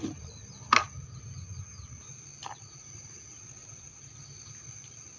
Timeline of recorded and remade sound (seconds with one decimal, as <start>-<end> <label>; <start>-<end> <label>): 0.0-3.6 recorded; 3.6-4.5 remade; 4.5-5.2 recorded